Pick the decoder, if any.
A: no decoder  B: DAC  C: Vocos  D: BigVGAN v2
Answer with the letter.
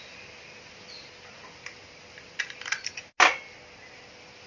A